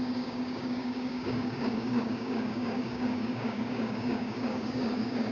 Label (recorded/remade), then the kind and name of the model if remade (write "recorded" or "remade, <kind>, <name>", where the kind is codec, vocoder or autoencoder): remade, codec, DAC